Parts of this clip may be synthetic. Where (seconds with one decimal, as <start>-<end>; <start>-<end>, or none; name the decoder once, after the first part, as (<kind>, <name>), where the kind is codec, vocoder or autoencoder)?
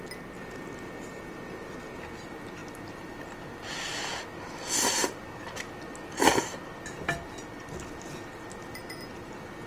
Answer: none